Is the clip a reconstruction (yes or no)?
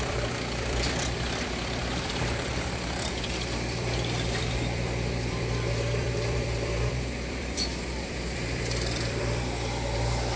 yes